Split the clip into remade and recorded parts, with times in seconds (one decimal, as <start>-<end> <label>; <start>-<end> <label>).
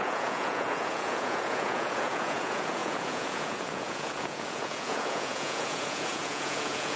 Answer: 0.0-7.0 remade